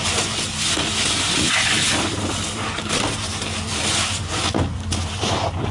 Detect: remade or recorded remade